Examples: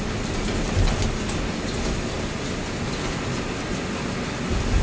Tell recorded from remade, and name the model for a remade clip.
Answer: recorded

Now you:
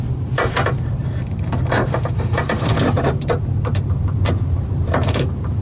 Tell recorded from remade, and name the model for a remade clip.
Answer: remade, vocoder, BigVGAN v2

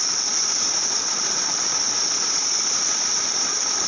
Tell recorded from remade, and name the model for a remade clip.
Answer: recorded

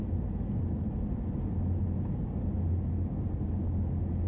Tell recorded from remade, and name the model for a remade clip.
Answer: recorded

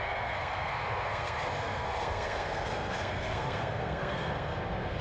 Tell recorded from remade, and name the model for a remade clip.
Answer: remade, codec, SNAC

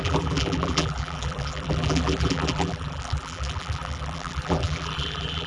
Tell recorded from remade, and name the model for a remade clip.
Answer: remade, vocoder, BigVGAN v2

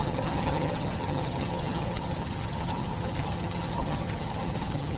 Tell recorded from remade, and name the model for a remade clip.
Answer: remade, vocoder, HiFi-GAN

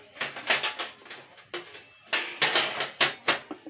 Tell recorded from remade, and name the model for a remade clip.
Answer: recorded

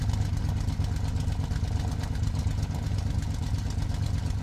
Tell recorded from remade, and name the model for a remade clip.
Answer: recorded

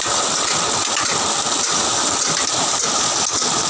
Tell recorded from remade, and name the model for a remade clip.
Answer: recorded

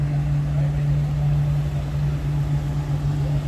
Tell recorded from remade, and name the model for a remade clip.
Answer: recorded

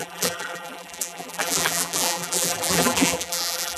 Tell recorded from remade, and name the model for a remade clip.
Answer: remade, vocoder, BigVGAN v2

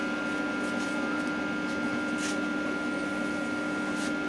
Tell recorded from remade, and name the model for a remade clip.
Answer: recorded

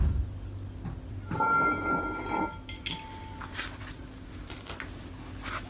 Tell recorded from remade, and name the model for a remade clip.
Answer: recorded